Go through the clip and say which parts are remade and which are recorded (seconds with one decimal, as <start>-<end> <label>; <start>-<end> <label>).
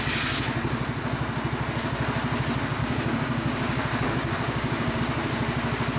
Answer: 0.0-2.8 recorded; 2.8-5.0 remade; 5.0-6.0 recorded